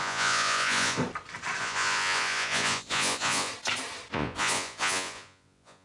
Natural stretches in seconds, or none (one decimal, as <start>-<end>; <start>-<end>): 1.0-1.6; 3.5-4.1